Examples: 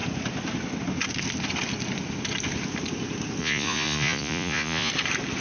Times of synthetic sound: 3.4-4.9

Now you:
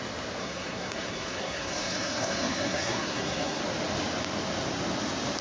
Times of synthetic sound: 0.4-3.6

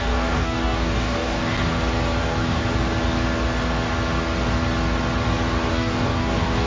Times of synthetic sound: 0.0-1.4; 2.2-2.6; 5.7-6.7

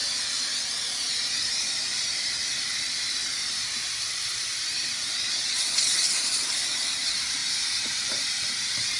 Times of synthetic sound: 1.1-2.4; 3.3-9.0